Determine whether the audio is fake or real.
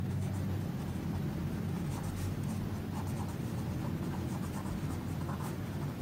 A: fake